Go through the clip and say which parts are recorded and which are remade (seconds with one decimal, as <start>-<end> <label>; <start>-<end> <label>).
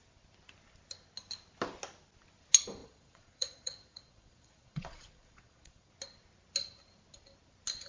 0.0-2.8 recorded; 2.8-5.9 remade; 5.9-7.9 recorded